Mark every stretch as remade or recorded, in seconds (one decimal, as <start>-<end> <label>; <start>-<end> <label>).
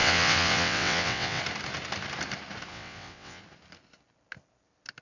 0.0-1.4 remade; 1.4-2.7 recorded; 2.7-3.4 remade; 3.4-5.0 recorded